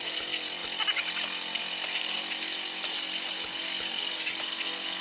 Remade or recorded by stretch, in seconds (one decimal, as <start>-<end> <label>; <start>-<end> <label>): 0.0-5.0 recorded